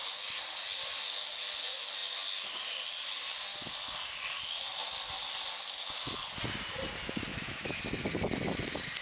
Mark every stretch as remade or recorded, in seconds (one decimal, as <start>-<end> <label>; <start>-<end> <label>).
0.0-7.3 recorded; 7.3-7.8 remade; 7.8-9.0 recorded